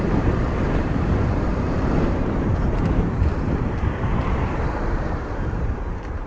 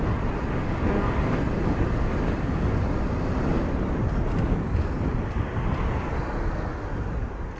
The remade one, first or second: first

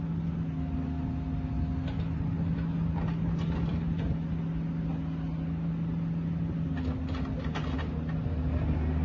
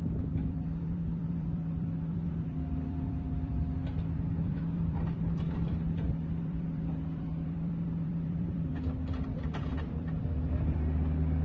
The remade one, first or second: second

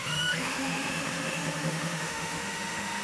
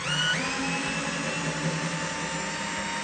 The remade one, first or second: first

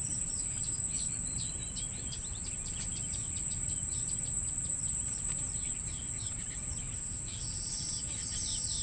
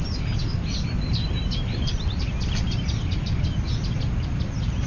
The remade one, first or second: first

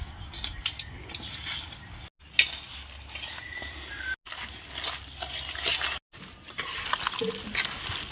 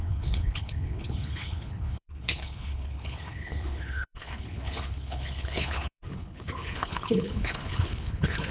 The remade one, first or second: second